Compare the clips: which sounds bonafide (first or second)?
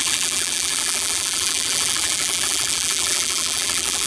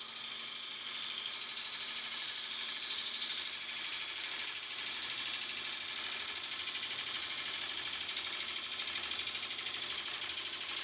second